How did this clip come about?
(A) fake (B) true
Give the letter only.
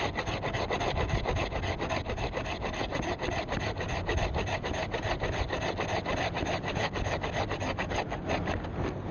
B